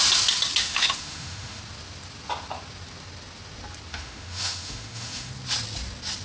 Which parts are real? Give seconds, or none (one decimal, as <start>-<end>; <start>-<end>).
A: 0.0-0.6; 1.6-3.9; 5.3-6.2